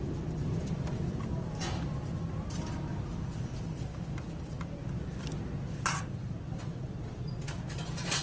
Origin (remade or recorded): recorded